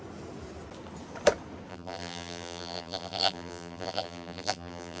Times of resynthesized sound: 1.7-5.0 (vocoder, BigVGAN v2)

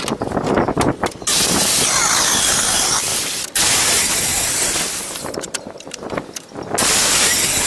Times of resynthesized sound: 3.1-6.0 (vocoder, BigVGAN v2)